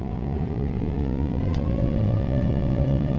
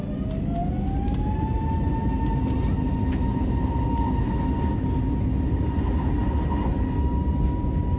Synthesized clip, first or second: first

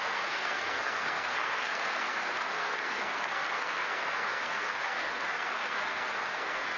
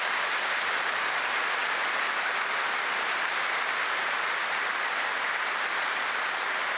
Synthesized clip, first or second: first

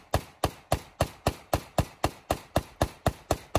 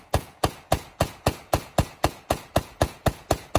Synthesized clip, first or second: second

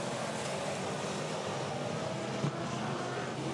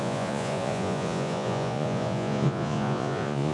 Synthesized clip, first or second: second